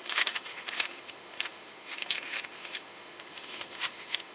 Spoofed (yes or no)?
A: yes